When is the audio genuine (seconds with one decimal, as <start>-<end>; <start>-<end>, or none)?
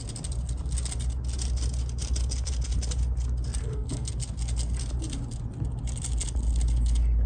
0.0-3.6; 4.1-7.3